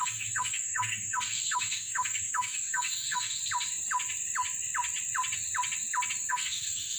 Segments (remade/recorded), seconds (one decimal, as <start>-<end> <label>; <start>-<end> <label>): 0.0-3.4 remade; 3.4-6.3 recorded; 6.3-7.0 remade

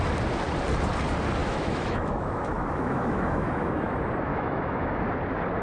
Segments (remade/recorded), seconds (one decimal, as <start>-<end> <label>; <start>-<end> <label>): 0.0-1.4 recorded; 1.4-3.9 remade; 3.9-4.3 recorded; 4.3-5.0 remade; 5.0-5.6 recorded

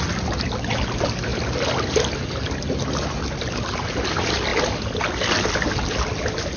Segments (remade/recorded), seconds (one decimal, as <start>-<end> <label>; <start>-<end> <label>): 0.0-6.6 recorded

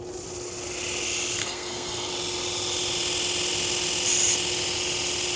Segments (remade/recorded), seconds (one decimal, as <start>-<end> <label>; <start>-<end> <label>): 0.0-1.4 recorded; 1.4-2.1 remade; 2.1-5.4 recorded

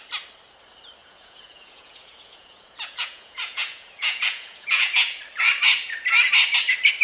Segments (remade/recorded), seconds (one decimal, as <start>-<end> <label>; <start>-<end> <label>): 0.0-1.0 recorded; 1.0-5.2 remade; 5.2-7.0 recorded

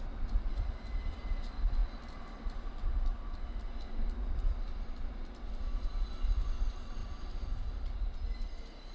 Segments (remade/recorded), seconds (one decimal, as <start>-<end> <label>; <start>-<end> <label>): 0.0-8.9 recorded